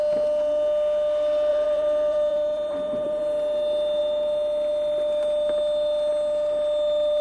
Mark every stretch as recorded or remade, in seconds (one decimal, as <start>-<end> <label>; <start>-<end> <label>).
0.0-1.5 recorded; 1.5-3.2 remade; 3.2-7.2 recorded